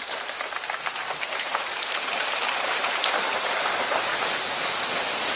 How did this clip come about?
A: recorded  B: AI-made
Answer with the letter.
B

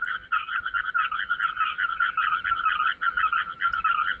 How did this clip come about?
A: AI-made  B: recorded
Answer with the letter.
B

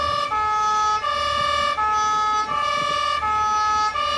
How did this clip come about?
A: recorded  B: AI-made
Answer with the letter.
A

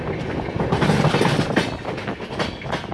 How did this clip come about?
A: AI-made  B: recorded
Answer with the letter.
B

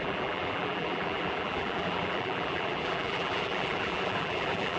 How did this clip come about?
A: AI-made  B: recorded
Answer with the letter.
A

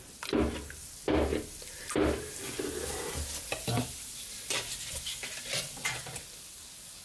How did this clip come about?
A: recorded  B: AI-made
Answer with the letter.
A